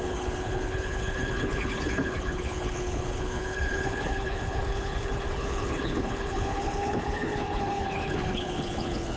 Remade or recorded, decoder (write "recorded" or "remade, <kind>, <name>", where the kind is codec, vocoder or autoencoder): remade, codec, HILCodec